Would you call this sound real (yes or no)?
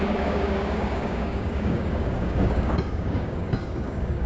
no